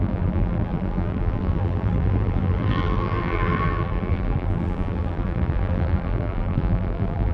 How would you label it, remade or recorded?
remade